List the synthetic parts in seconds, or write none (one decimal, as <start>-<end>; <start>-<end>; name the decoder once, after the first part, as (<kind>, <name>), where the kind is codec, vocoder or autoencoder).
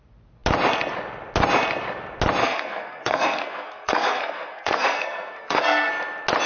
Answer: 2.4-5.9 (codec, SNAC)